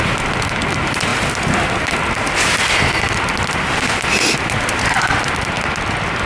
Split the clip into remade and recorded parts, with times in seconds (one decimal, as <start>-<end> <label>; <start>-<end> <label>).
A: 0.0-6.3 recorded